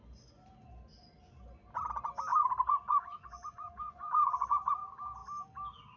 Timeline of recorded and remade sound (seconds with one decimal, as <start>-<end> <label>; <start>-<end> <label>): 0.0-2.3 recorded; 2.3-4.7 remade; 4.7-6.0 recorded